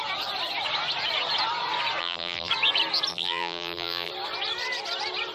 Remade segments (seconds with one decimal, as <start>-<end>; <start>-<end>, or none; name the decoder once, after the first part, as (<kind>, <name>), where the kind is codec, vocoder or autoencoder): 2.0-2.5 (vocoder, BigVGAN v2); 3.1-4.1